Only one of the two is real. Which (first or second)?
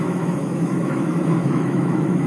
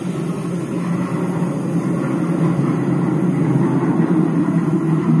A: second